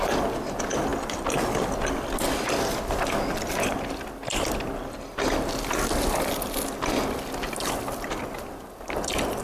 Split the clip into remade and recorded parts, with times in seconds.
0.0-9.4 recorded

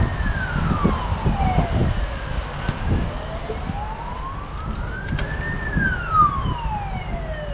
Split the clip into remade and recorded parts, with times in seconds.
0.0-7.5 recorded

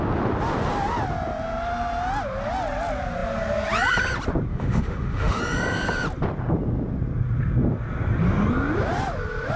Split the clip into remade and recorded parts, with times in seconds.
0.0-4.5 recorded; 4.5-5.4 remade; 5.4-9.6 recorded

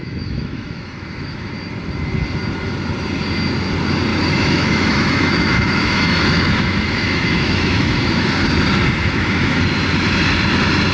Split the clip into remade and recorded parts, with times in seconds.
0.0-1.5 remade; 1.5-4.1 recorded; 4.1-8.3 remade; 8.3-9.0 recorded; 9.0-9.6 remade; 9.6-10.9 recorded

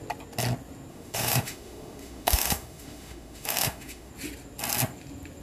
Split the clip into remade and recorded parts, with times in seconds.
0.0-0.9 recorded; 0.9-4.1 remade; 4.1-5.4 recorded